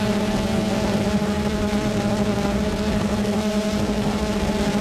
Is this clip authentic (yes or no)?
no